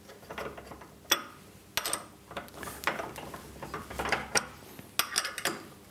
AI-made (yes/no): no